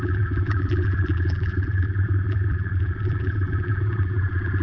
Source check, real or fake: fake